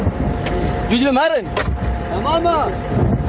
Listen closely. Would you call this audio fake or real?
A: real